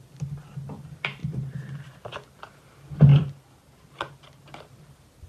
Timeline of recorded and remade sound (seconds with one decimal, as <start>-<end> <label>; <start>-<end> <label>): 0.0-1.2 recorded; 1.2-2.0 remade; 2.0-5.3 recorded